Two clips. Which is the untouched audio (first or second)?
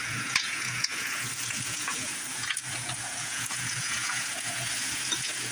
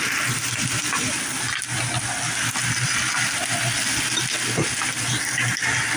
second